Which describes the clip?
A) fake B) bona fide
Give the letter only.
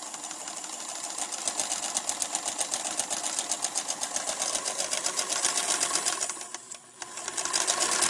B